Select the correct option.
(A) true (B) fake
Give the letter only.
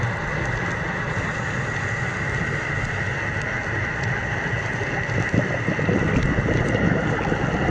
A